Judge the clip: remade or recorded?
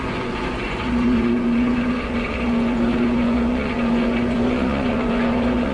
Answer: remade